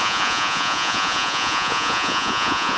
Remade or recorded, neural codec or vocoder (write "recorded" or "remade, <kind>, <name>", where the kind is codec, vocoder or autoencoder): remade, vocoder, Vocos